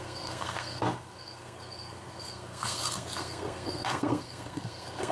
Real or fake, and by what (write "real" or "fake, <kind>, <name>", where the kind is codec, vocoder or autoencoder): fake, codec, SNAC